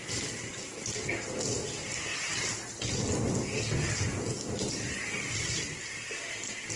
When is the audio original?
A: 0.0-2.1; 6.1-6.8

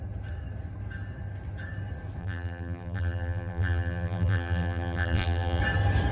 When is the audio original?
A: 0.0-2.2; 5.6-6.1